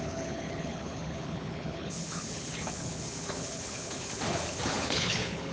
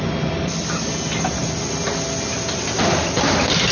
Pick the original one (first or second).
second